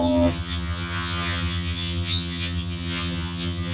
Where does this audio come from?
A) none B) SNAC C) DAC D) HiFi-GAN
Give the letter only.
D